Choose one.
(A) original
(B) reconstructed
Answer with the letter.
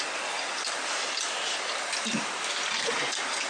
A